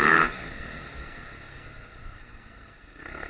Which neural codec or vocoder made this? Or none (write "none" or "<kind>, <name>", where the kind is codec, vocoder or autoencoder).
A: codec, SNAC